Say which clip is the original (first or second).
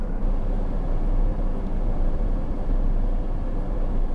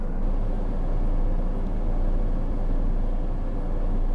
second